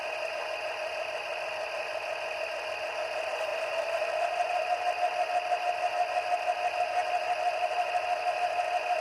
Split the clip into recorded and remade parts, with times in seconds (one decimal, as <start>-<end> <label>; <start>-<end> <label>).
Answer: 0.0-9.0 recorded